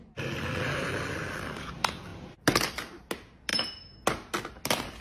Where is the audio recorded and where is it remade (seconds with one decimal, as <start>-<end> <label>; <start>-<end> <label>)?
0.0-5.0 recorded